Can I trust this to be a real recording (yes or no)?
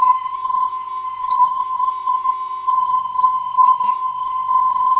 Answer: no